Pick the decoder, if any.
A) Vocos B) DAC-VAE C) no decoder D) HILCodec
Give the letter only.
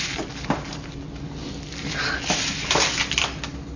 C